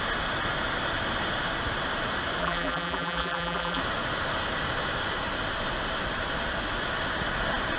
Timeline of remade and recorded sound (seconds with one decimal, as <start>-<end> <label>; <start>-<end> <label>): 0.0-2.4 recorded; 2.4-3.8 remade; 3.8-7.8 recorded